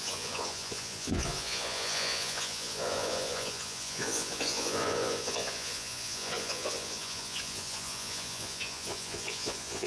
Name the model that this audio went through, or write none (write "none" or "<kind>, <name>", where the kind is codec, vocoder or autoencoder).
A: vocoder, Vocos